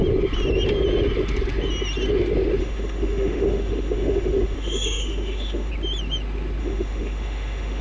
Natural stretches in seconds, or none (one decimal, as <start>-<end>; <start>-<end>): 0.0-2.6; 5.7-6.6